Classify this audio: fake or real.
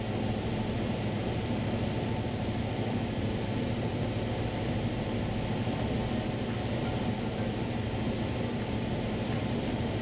real